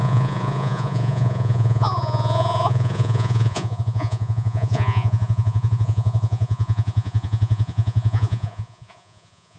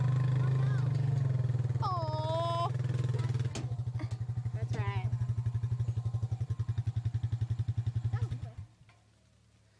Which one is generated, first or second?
first